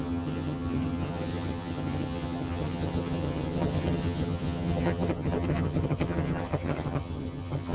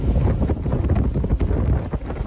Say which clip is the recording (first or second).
second